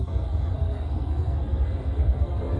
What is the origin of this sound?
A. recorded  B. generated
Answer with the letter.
B